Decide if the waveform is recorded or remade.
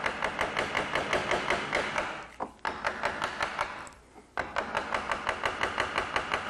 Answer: recorded